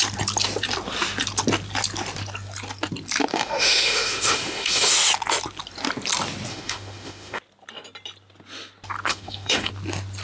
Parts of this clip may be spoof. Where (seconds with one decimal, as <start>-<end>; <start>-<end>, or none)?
3.3-4.9; 6.5-7.4; 9.1-9.7